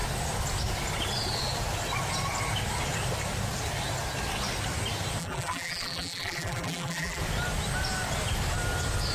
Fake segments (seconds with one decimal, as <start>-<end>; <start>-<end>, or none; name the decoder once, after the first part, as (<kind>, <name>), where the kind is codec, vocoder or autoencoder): 5.2-7.2 (vocoder, BigVGAN v2)